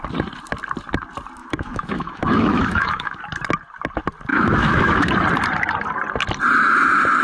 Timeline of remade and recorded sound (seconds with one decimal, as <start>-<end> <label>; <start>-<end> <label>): 0.0-1.4 recorded; 1.4-3.2 remade; 3.2-4.3 recorded; 4.3-5.1 remade; 5.1-7.2 recorded